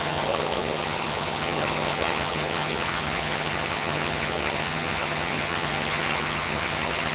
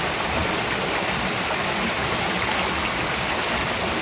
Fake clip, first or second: first